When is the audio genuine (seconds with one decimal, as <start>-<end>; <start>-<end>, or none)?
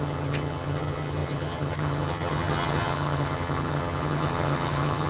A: none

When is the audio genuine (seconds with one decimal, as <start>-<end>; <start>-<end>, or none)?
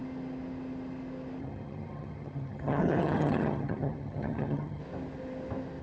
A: 0.0-1.4; 4.8-5.8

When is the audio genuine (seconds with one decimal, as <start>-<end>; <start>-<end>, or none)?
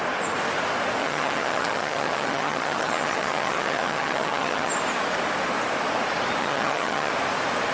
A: 0.0-1.0; 4.7-6.4; 7.1-7.7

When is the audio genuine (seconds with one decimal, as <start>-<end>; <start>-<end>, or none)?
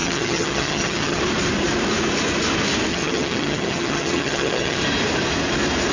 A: 1.2-2.9; 4.8-5.9